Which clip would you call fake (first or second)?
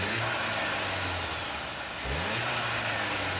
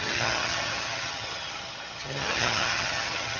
second